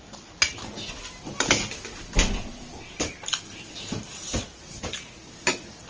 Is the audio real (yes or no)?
yes